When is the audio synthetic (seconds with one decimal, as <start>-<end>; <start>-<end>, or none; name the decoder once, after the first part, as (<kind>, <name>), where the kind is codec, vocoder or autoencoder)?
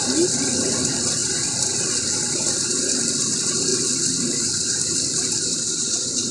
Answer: 1.2-1.8 (vocoder, BigVGAN v2); 3.7-6.3